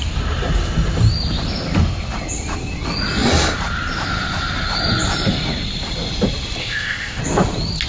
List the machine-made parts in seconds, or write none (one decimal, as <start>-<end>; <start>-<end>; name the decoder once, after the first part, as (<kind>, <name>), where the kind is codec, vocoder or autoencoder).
6.6-7.2 (codec, ZipCodec)